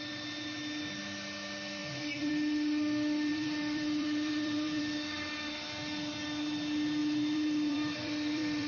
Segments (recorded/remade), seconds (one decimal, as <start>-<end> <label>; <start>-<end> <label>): 0.0-1.8 recorded; 1.8-2.3 remade; 2.3-3.3 recorded; 3.3-4.8 remade; 4.8-7.0 recorded; 7.0-8.7 remade